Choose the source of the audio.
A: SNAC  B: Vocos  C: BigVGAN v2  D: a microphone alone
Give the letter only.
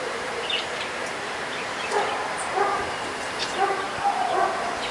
C